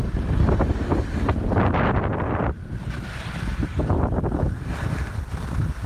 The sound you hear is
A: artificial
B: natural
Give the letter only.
A